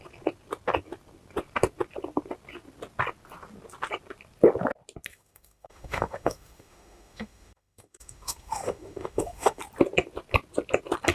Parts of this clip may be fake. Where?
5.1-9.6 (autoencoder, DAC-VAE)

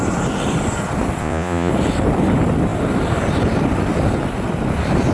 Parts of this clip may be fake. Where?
1.2-1.7 (vocoder, Vocos)

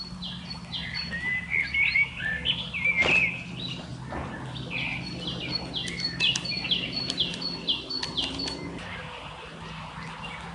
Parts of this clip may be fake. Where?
none

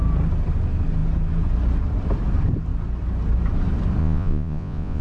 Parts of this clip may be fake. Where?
4.0-5.0 (vocoder, Vocos)

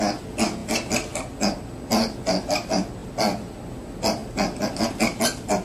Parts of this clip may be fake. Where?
none

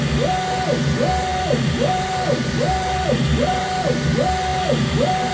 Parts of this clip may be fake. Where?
1.3-3.8 (vocoder, BigVGAN v2); 4.5-5.3

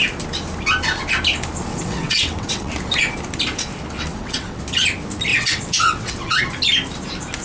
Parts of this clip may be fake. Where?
1.7-2.7 (vocoder, WaveNeXt); 4.1-4.6; 5.3-6.4